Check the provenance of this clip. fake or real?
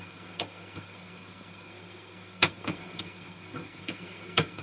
fake